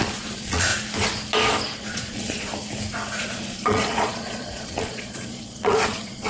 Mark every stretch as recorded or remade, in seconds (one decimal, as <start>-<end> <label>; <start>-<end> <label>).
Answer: 0.0-0.7 remade; 0.7-1.8 recorded; 1.8-2.5 remade; 2.5-3.2 recorded; 3.2-6.3 remade

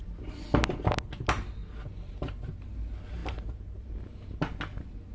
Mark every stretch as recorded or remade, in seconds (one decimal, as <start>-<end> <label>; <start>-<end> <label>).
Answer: 0.0-5.1 recorded

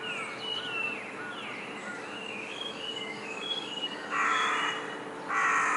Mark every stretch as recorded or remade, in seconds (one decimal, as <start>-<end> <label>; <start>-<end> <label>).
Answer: 0.0-1.8 recorded; 1.8-4.4 remade; 4.4-5.8 recorded

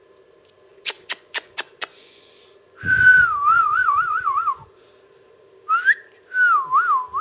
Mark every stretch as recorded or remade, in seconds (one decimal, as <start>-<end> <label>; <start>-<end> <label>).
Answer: 0.0-0.7 recorded; 0.7-4.9 remade; 4.9-7.2 recorded

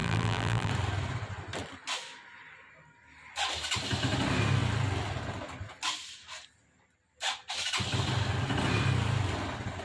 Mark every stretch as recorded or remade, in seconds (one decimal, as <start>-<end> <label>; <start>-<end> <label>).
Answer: 0.0-0.7 remade; 0.7-9.8 recorded

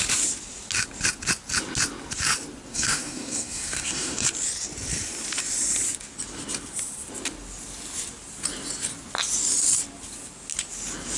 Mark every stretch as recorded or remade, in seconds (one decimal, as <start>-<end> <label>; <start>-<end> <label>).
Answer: 0.0-2.7 recorded; 2.7-4.3 remade; 4.3-11.2 recorded

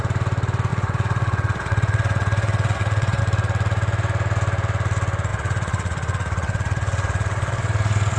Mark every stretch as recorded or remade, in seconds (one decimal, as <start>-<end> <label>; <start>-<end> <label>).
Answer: 0.0-0.7 recorded; 0.7-3.2 remade; 3.2-5.3 recorded; 5.3-8.2 remade